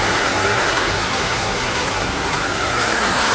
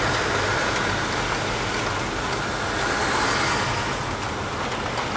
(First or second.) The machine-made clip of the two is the first